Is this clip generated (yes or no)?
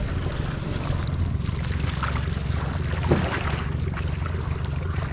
no